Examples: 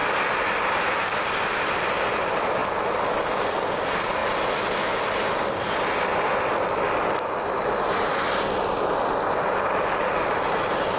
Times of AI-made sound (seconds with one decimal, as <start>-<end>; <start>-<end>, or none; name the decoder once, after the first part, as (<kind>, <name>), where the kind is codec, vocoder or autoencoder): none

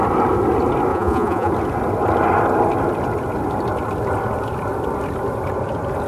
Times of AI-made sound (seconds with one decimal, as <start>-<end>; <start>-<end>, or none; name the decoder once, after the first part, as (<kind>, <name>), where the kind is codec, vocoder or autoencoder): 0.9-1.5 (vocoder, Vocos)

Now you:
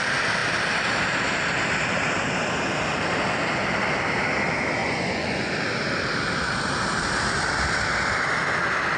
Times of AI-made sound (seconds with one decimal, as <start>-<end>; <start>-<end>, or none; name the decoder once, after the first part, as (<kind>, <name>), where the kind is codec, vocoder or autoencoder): 4.8-5.5 (vocoder, Vocos)

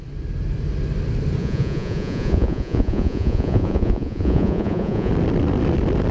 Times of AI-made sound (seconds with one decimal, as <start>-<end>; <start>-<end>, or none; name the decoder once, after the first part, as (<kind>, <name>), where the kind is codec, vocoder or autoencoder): 1.4-5.1 (vocoder, Vocos)

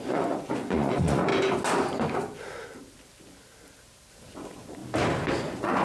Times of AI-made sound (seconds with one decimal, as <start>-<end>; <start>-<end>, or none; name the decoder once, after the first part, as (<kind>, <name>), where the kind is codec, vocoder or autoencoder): 0.0-1.3 (vocoder, Vocos); 4.1-4.8; 5.3-5.8

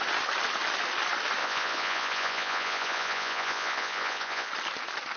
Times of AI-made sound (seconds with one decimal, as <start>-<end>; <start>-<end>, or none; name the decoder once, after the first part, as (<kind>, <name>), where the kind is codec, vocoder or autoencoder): 1.4-4.5 (vocoder, Vocos)

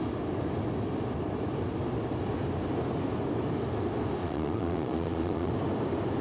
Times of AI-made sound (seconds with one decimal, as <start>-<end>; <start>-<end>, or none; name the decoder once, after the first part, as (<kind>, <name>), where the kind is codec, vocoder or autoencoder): 4.2-5.5 (vocoder, Vocos)

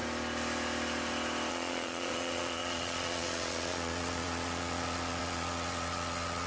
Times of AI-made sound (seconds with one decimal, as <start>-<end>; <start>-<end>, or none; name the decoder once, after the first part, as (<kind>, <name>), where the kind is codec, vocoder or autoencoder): 1.5-6.5 (vocoder, Vocos)